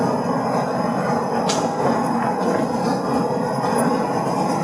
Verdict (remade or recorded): recorded